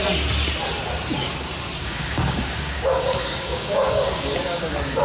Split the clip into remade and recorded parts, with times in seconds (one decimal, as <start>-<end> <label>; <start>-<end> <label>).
0.0-1.8 recorded; 1.8-5.0 remade